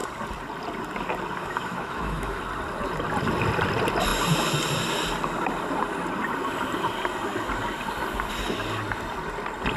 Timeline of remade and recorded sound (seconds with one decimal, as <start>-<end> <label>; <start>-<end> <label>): 0.0-1.4 recorded; 1.4-2.4 remade; 2.4-9.8 recorded